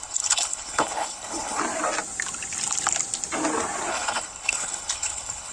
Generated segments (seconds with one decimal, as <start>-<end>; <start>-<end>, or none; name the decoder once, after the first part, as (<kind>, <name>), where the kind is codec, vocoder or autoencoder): 0.0-1.6 (codec, HILCodec); 3.9-5.5